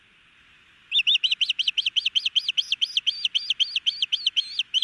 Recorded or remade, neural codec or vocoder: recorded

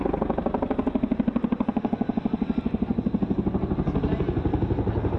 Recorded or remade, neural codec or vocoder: recorded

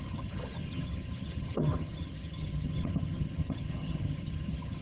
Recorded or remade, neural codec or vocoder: remade, vocoder, HiFi-GAN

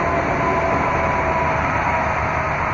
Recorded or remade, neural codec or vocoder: recorded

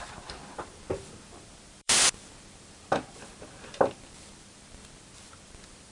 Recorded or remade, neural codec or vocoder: remade, vocoder, BigVGAN v2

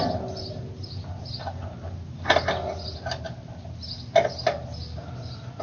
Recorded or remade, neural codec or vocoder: recorded